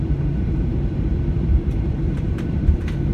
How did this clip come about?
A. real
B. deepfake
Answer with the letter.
B